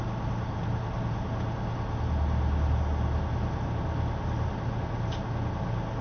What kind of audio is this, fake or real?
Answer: real